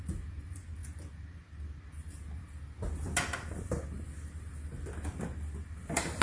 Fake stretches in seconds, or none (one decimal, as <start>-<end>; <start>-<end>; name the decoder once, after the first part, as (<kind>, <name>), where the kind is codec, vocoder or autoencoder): none

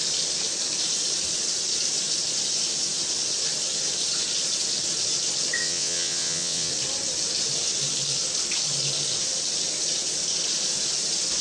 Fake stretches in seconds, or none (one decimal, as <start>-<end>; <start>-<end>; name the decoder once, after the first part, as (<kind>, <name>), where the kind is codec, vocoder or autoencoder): 5.6-6.7 (vocoder, WaveNeXt)

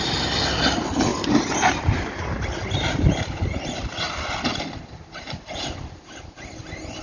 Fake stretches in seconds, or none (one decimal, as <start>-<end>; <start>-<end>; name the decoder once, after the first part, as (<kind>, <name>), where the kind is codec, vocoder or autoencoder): none

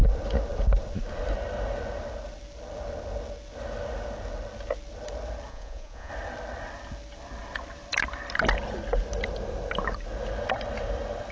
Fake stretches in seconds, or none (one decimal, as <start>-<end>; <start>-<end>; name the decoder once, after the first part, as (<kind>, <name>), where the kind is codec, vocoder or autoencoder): 5.5-6.1 (vocoder, Vocos)